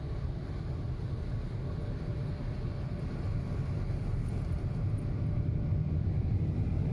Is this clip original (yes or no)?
yes